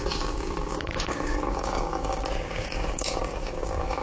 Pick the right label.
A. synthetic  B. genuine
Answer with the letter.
A